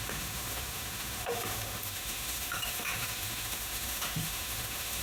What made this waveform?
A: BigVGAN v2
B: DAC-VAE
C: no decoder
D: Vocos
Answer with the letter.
B